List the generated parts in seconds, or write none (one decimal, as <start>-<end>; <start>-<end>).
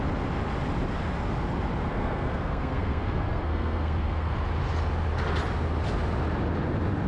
1.9-4.3